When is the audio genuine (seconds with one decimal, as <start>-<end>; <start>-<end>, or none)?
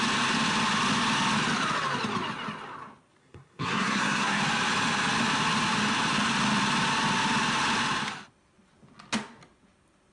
0.0-3.2; 4.4-10.1